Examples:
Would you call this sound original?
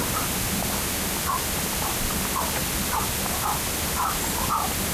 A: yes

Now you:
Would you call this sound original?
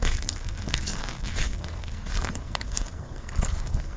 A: no